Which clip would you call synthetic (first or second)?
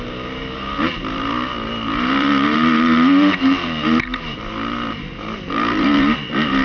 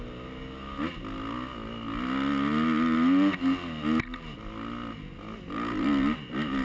first